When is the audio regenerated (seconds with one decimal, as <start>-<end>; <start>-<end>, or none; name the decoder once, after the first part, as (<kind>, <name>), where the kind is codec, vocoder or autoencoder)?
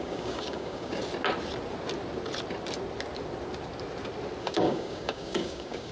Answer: 0.0-1.0 (codec, DAC); 4.4-5.9